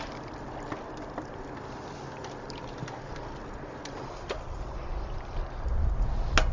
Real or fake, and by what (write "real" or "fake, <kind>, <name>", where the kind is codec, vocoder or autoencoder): real